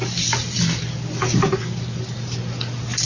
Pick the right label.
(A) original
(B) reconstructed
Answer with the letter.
A